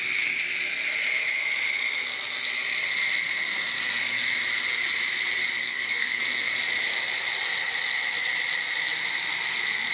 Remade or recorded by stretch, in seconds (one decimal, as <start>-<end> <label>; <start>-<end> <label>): 0.0-5.6 recorded; 5.6-6.2 remade; 6.2-9.9 recorded